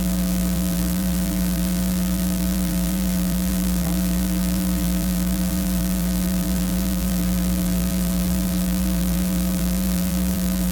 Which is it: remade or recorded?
remade